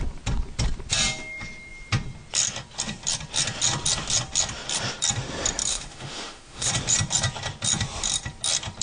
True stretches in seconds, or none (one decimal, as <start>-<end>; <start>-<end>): 0.0-5.7; 6.7-8.8